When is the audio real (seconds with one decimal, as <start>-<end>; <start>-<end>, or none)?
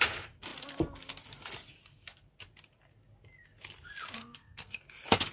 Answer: 0.0-4.2; 4.8-5.3